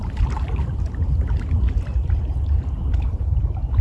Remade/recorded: recorded